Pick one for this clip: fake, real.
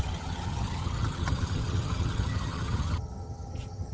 fake